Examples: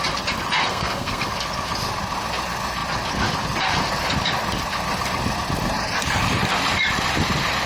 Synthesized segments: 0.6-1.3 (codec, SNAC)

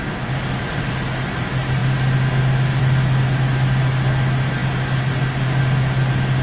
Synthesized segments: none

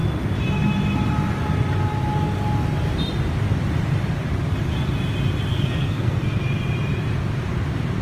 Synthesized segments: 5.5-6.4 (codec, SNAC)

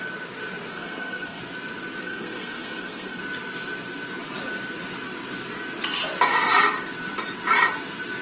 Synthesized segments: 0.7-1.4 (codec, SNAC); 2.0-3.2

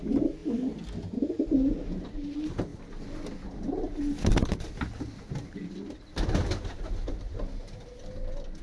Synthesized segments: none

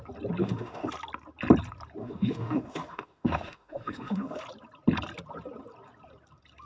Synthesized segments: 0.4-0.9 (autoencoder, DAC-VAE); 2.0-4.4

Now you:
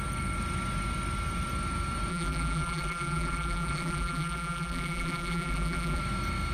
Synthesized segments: 2.1-6.0 (vocoder, BigVGAN v2)